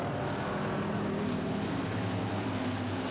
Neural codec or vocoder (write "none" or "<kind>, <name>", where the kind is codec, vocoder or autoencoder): none